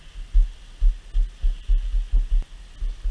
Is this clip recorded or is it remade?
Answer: recorded